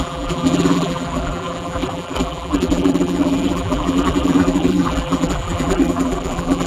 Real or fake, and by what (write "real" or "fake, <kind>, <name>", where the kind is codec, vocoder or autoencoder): fake, vocoder, BigVGAN v2